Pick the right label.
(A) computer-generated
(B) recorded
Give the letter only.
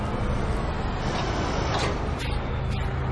B